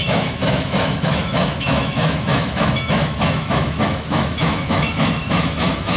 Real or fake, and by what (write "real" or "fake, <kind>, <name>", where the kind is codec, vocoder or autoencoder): fake, autoencoder, DAC-VAE